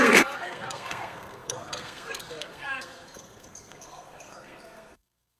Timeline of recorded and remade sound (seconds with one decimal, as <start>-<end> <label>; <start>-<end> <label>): 0.0-5.4 remade